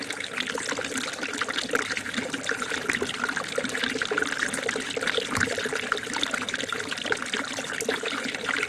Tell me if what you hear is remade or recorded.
recorded